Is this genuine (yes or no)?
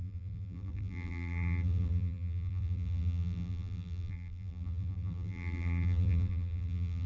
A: no